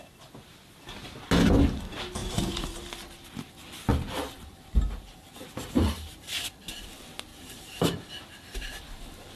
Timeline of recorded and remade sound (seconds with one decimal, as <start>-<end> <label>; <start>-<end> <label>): 0.0-2.2 recorded; 2.2-2.9 remade; 2.9-3.9 recorded; 3.9-6.3 remade; 6.3-7.3 recorded; 7.3-8.1 remade; 8.1-9.4 recorded